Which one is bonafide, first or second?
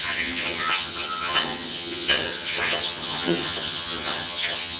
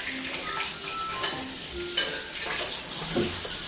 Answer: second